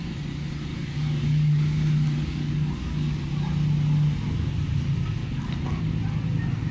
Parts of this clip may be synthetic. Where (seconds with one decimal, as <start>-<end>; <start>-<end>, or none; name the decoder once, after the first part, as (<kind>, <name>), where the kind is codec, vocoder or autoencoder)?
0.7-3.3 (codec, DAC); 5.2-5.8